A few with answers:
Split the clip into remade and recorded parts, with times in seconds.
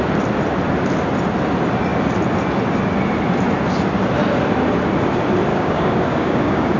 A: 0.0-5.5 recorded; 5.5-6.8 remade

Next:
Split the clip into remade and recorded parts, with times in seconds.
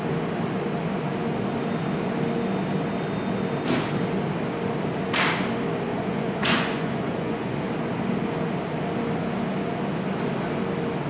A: 0.0-5.9 recorded; 5.9-7.6 remade; 7.6-11.1 recorded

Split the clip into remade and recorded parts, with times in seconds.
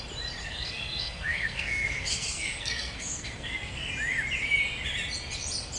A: 0.0-0.4 recorded; 0.4-3.9 remade; 3.9-5.8 recorded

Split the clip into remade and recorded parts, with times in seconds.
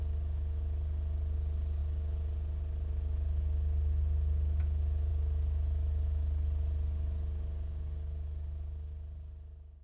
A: 0.0-9.8 recorded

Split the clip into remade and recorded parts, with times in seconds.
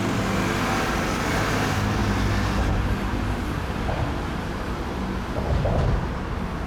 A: 0.0-6.7 recorded